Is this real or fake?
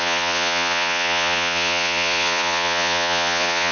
fake